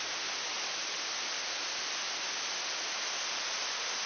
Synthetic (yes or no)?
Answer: no